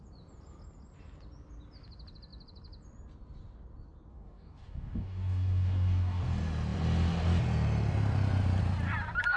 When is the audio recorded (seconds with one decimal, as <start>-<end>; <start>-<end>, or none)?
0.0-4.1; 6.2-9.4